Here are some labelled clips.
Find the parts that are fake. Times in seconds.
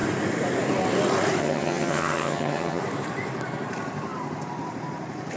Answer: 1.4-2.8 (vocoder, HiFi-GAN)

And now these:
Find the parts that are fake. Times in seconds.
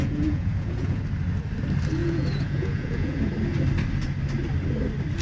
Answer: 0.0-1.0 (vocoder, Vocos); 2.0-3.2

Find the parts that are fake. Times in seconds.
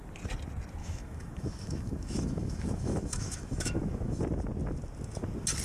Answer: 0.8-4.2 (autoencoder, DAC-VAE)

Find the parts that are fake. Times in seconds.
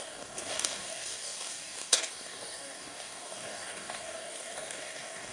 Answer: 0.0-5.3 (codec, DAC)